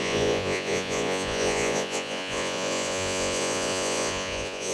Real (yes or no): no